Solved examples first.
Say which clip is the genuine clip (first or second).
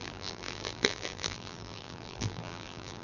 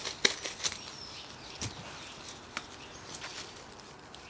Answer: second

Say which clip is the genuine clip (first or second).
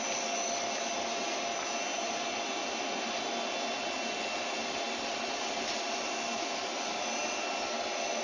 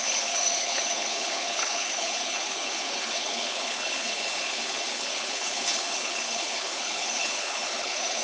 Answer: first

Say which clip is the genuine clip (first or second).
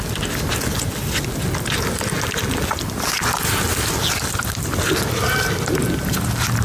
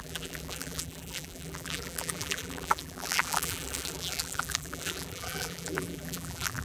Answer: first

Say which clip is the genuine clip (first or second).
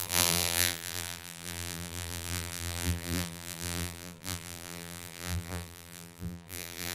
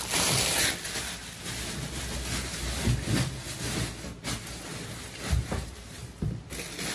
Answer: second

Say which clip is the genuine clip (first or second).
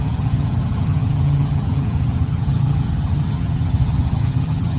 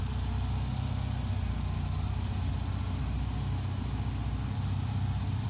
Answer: second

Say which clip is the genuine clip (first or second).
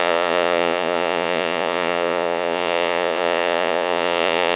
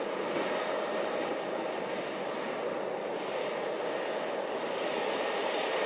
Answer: second